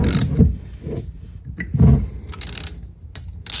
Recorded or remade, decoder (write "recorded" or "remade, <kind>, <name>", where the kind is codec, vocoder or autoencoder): recorded